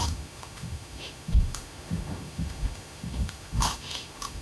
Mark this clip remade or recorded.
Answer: remade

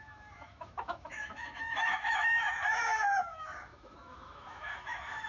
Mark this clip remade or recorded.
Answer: remade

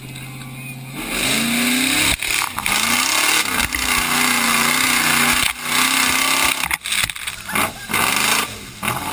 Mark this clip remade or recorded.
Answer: recorded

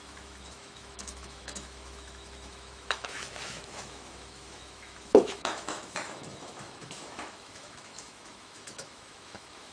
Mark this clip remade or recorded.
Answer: remade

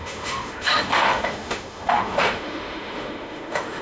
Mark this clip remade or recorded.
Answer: remade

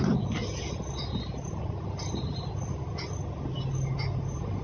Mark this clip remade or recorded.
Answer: recorded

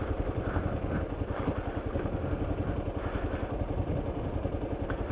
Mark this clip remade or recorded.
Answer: recorded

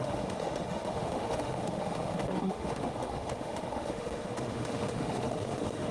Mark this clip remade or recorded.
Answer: remade